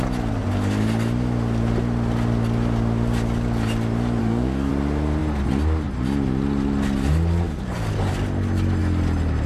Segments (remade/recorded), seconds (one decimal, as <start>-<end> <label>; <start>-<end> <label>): 0.0-4.2 recorded; 4.2-4.7 remade; 4.7-9.5 recorded